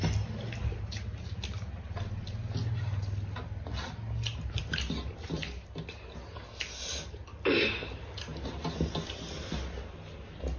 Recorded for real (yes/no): yes